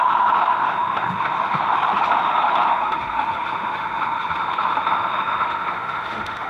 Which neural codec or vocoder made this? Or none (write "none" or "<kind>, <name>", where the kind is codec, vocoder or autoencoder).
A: autoencoder, DAC-VAE